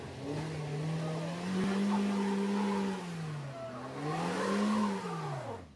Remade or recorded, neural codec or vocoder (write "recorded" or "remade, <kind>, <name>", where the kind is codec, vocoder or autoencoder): recorded